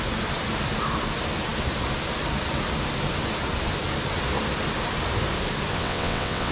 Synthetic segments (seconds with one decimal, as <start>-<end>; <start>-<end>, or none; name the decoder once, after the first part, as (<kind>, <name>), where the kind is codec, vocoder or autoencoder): 5.7-6.5 (vocoder, WaveNeXt)